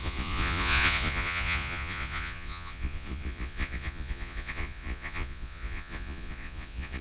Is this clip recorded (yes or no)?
no